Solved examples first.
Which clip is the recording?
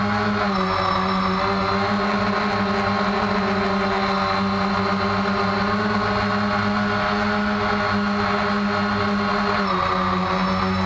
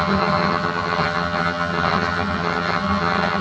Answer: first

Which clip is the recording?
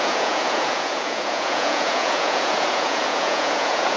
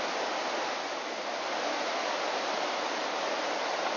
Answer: second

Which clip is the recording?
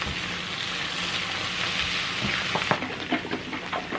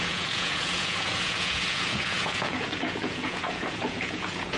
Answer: first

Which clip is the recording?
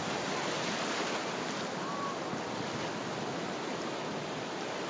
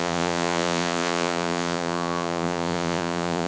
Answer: first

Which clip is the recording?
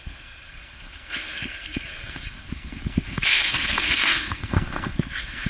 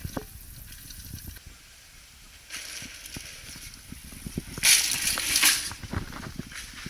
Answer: second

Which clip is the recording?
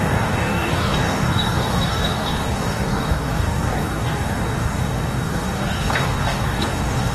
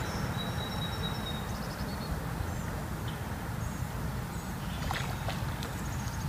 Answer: second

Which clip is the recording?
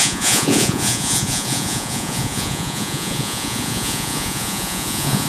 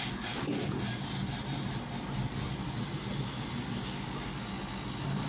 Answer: second